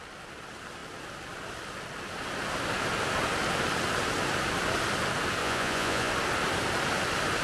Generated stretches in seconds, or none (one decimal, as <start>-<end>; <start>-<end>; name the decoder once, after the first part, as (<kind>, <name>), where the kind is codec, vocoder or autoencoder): 5.4-6.1 (vocoder, Vocos)